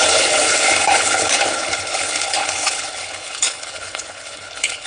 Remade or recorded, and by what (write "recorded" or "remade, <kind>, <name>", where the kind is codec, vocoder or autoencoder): remade, codec, HILCodec